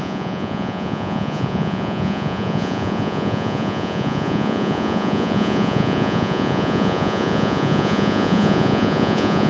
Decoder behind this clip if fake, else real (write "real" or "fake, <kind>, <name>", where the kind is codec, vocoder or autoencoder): fake, vocoder, Vocos